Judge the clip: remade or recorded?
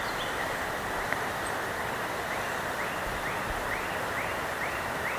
recorded